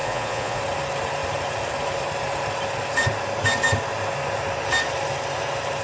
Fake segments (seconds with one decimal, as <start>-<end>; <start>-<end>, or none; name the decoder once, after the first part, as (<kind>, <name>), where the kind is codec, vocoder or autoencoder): 0.0-0.6 (vocoder, Vocos)